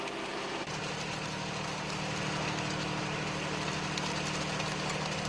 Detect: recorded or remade recorded